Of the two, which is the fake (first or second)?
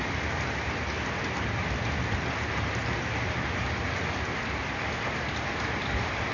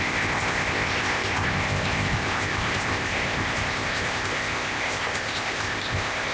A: second